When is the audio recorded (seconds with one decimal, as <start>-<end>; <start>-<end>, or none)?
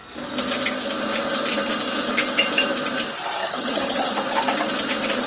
0.0-3.4; 4.1-5.3